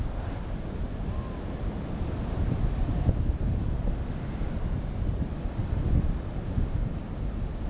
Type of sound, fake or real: real